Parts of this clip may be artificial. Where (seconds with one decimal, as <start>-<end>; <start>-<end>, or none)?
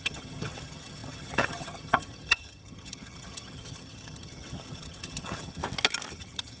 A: 0.0-5.6; 6.1-6.6